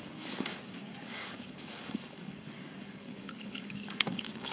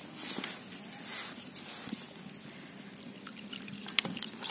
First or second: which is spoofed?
first